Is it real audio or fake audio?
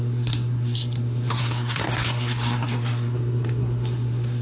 fake